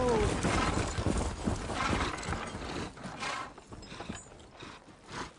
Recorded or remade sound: recorded